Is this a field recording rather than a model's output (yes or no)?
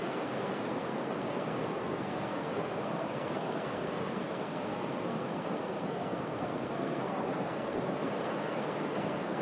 no